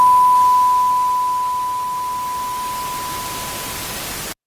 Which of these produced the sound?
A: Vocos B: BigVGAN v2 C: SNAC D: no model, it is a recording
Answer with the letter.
D